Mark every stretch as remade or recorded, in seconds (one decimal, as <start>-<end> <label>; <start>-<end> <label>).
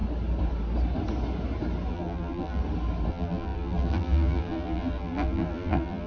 0.0-1.9 recorded; 1.9-2.6 remade; 2.6-3.1 recorded; 3.1-6.1 remade